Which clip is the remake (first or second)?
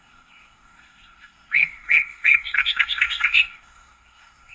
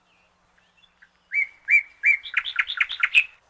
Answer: first